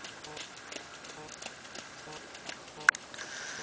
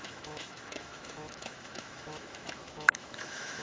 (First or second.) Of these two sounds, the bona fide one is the first